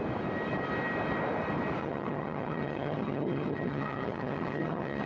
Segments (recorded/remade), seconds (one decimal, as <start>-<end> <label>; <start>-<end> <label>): 0.0-1.8 recorded; 1.8-5.1 remade